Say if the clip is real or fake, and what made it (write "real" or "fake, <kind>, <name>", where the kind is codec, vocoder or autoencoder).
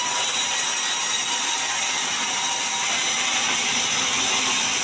real